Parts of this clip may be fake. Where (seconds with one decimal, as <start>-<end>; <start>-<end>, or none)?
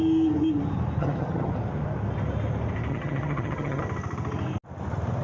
1.0-1.5; 2.9-3.8